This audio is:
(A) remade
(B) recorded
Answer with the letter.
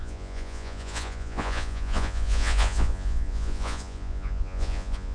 A